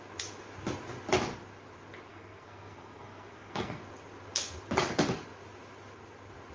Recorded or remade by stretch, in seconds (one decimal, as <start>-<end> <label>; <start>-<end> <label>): 0.0-2.1 recorded; 2.1-3.8 remade; 3.8-6.5 recorded